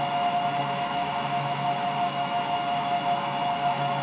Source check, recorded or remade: remade